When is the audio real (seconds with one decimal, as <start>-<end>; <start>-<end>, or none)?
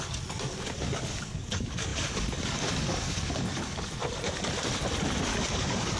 4.0-5.2